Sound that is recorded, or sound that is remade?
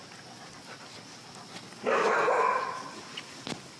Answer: recorded